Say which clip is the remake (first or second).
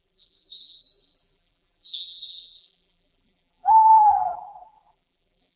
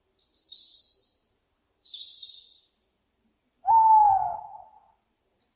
first